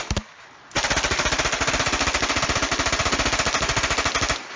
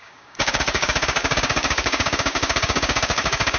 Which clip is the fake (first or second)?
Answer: second